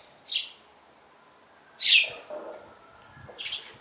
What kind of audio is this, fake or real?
real